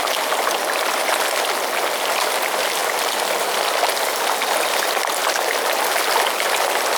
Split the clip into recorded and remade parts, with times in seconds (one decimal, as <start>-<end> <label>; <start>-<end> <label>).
0.0-7.0 recorded